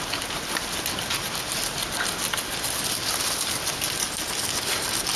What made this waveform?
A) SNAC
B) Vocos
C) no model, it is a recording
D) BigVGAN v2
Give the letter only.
C